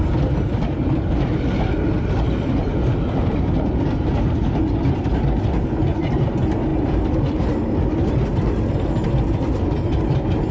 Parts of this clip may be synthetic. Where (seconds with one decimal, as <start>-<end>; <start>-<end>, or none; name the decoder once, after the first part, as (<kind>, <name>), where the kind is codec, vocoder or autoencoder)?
6.7-7.3 (vocoder, BigVGAN v2)